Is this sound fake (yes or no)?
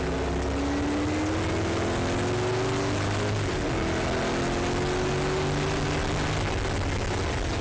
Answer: no